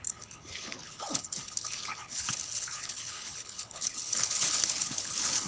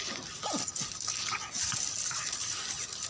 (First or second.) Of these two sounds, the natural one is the second